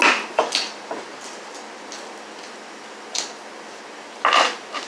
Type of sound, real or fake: real